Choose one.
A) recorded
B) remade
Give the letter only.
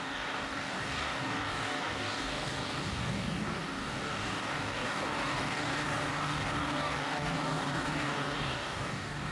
B